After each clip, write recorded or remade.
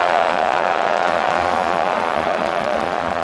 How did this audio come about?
remade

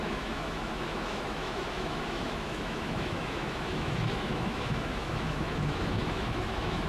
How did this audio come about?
remade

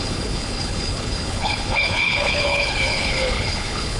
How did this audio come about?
remade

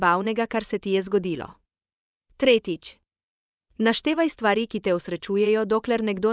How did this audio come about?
remade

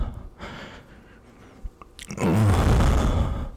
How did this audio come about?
recorded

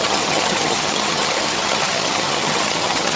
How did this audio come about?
remade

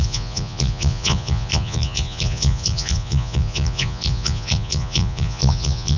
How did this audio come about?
remade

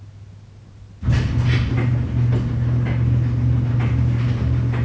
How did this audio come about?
recorded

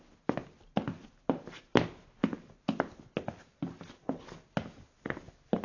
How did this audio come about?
recorded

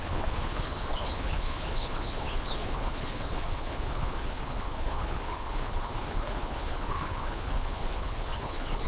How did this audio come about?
remade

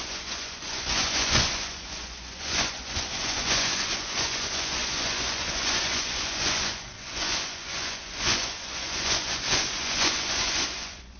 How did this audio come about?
remade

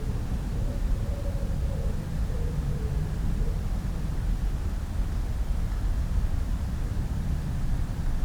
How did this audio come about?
recorded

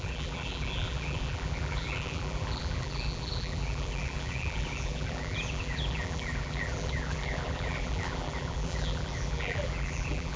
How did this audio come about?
remade